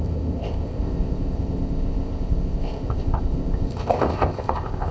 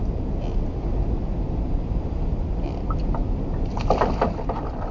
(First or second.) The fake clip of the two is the first